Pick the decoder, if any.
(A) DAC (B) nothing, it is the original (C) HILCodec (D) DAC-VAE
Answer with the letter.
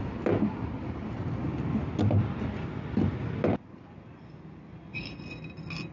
B